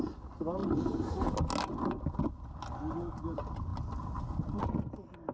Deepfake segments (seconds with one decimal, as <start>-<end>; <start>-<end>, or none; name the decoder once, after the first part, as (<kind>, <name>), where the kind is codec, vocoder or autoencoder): none